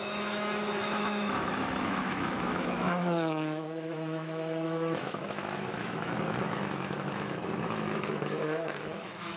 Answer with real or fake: fake